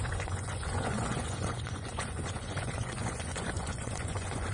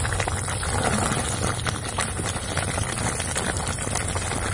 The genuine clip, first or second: second